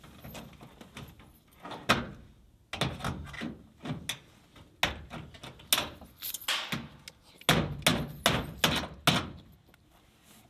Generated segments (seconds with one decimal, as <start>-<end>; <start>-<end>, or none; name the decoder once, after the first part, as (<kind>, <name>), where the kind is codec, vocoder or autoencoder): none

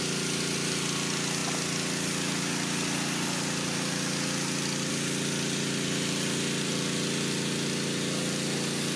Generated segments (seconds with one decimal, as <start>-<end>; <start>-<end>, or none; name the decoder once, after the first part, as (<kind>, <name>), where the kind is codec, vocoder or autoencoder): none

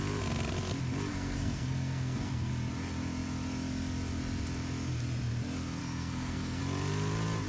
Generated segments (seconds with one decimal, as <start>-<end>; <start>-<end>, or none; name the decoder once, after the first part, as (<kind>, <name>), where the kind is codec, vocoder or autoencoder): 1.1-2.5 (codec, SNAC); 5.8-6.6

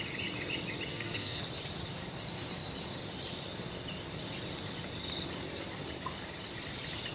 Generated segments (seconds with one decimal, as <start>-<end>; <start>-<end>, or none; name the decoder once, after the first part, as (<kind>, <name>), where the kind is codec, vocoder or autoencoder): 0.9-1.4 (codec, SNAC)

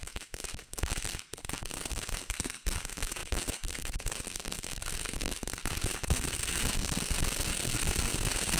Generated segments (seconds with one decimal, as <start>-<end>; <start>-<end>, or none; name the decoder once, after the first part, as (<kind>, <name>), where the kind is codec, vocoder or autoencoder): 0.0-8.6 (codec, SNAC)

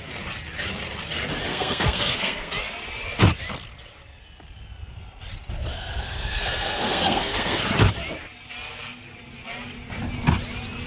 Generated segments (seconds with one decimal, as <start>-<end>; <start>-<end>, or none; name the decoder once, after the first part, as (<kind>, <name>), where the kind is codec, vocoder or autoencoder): 1.5-2.5 (codec, SNAC); 5.7-7.6

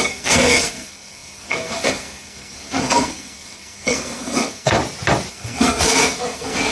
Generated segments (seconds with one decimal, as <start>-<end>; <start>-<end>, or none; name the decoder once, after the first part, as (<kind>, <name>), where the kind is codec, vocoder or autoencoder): 0.0-4.8 (codec, SNAC); 5.3-6.7